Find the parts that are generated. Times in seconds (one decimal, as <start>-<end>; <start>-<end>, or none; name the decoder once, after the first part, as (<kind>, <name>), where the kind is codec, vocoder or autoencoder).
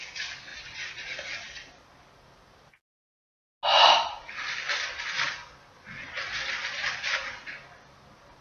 0.5-1.3 (vocoder, BigVGAN v2)